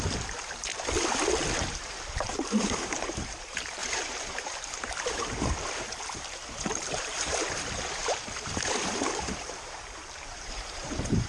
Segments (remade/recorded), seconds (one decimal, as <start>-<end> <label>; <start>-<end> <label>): 0.0-0.7 remade; 0.7-1.7 recorded; 1.7-11.3 remade